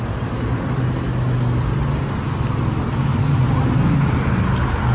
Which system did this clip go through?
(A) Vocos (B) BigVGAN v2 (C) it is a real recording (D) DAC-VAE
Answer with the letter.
C